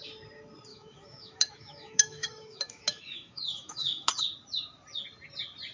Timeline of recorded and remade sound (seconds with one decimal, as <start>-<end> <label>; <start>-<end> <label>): 0.0-0.7 recorded; 0.7-4.1 remade; 4.1-5.7 recorded